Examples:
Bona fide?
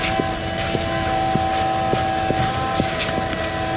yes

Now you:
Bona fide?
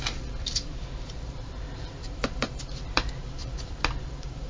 no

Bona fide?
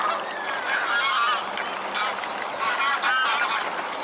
yes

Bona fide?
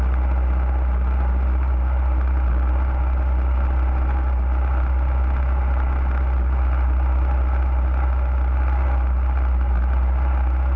no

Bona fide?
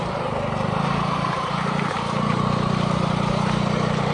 no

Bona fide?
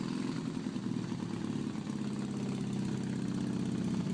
yes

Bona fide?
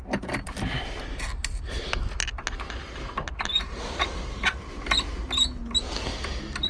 yes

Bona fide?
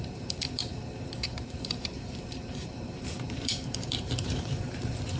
no